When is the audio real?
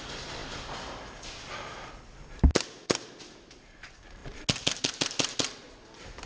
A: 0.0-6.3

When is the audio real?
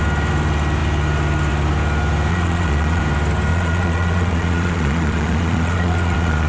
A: 0.0-2.3; 3.0-3.5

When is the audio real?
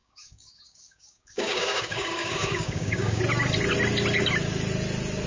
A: 3.2-5.3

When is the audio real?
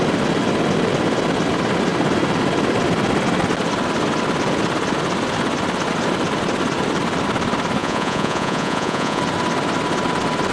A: 0.0-7.8; 9.2-10.5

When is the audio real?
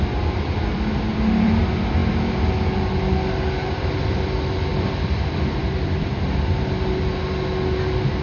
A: 0.0-1.1; 1.6-4.7; 6.1-8.2